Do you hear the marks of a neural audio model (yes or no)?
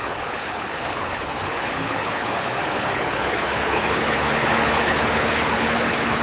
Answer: yes